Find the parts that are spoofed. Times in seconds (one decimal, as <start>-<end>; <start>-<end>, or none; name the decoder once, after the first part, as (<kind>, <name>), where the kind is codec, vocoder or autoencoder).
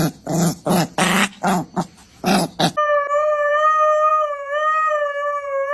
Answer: 4.1-4.9 (autoencoder, DAC-VAE)